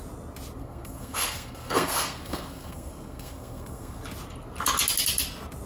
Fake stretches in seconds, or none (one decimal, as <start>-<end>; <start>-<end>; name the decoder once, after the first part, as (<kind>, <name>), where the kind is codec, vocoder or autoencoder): 0.6-4.0 (codec, SNAC)

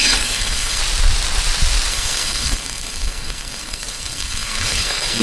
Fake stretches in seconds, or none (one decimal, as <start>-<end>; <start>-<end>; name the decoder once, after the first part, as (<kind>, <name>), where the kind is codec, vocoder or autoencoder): 0.0-0.8 (codec, SNAC); 1.9-5.2

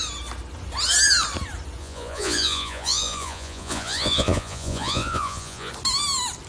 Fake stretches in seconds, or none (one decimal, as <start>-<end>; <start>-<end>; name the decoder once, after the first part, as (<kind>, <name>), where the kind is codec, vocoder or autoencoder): 1.8-5.7 (vocoder, Vocos)

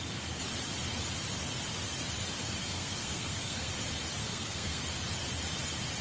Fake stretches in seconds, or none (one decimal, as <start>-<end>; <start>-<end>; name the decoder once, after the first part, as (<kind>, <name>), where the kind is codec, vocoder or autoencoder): 2.6-3.7 (codec, SNAC); 4.2-4.8

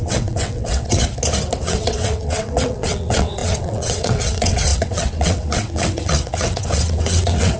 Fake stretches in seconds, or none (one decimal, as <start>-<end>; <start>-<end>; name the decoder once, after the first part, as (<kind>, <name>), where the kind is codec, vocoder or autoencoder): 0.0-1.0 (vocoder, WaveNeXt); 1.6-7.6

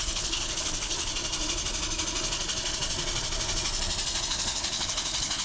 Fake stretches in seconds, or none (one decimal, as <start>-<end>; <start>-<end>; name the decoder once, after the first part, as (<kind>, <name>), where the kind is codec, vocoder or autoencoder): 0.0-1.1 (codec, HILCodec); 4.3-5.4

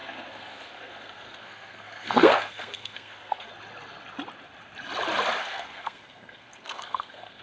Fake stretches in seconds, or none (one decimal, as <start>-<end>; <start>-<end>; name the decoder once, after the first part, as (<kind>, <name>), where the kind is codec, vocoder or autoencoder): 0.0-3.5 (codec, SNAC); 5.4-7.4

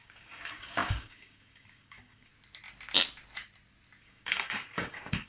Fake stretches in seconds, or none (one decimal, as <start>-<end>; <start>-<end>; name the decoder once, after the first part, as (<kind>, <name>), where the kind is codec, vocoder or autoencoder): 0.0-2.3 (codec, DAC); 4.0-5.3